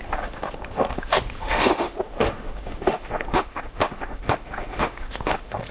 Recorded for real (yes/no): no